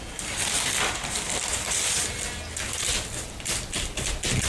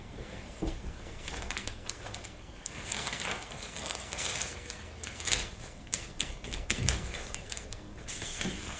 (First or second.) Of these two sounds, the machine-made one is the second